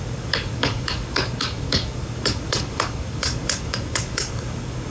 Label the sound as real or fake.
fake